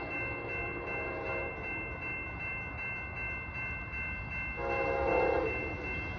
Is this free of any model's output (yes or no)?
yes